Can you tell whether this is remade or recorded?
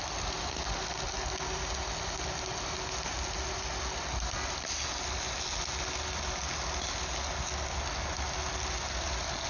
recorded